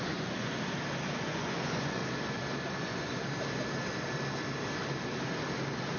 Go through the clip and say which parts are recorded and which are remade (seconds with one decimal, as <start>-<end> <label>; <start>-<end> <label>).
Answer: 0.0-0.5 remade; 0.5-1.2 recorded; 1.2-2.0 remade; 2.0-2.8 recorded; 2.8-3.2 remade; 3.2-6.0 recorded